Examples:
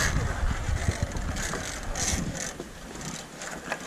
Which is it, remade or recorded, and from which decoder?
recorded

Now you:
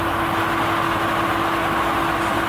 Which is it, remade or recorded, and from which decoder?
recorded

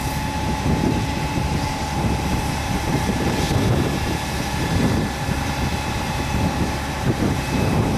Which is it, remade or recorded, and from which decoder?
remade, vocoder, BigVGAN v2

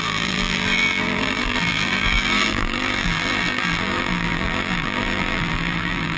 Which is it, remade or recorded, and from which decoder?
remade, vocoder, BigVGAN v2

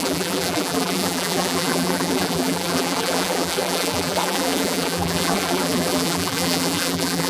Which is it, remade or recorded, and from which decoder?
remade, vocoder, BigVGAN v2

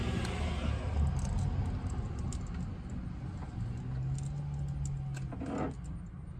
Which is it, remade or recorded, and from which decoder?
recorded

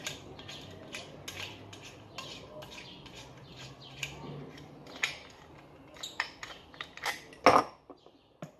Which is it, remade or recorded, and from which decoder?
recorded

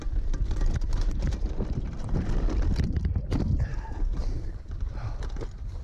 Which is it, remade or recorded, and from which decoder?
remade, vocoder, BigVGAN v2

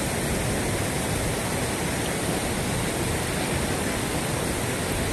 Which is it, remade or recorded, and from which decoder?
recorded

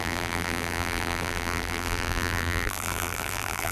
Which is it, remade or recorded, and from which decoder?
remade, vocoder, BigVGAN v2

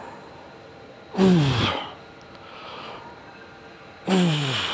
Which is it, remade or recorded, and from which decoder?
recorded